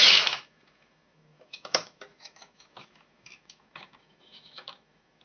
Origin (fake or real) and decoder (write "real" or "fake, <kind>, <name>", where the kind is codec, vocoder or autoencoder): fake, autoencoder, DAC-VAE